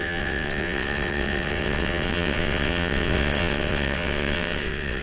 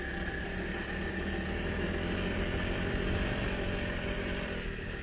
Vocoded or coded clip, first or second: first